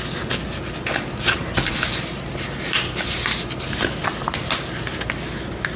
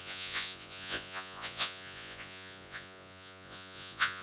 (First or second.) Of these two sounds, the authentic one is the first